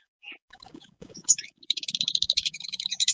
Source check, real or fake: fake